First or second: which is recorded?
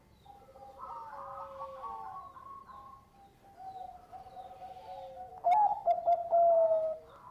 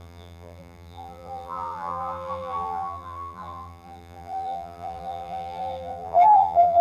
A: first